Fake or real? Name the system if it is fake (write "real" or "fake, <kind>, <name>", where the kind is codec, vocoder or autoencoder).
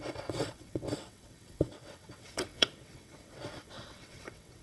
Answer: fake, vocoder, WaveNeXt